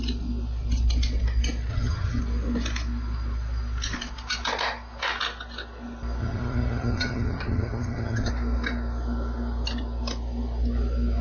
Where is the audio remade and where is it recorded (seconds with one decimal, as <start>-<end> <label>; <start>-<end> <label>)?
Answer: 0.0-1.7 recorded; 1.7-2.2 remade; 2.2-6.2 recorded; 6.2-8.3 remade; 8.3-11.2 recorded